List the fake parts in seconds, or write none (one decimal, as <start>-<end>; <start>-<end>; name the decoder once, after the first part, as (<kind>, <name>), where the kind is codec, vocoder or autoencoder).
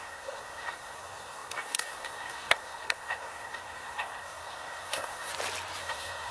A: 0.0-5.3 (codec, SNAC); 5.8-6.3